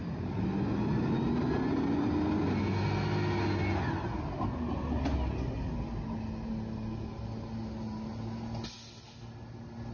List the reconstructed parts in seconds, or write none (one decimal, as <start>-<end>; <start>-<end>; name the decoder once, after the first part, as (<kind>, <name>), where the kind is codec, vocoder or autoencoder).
none